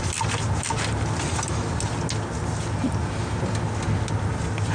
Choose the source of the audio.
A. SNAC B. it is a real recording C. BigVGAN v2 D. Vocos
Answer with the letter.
B